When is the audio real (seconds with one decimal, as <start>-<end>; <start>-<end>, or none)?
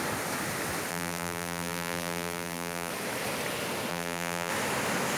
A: 0.0-0.9; 2.9-3.9; 4.5-5.2